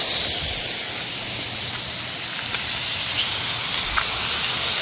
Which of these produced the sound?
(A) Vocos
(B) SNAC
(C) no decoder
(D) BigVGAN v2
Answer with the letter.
C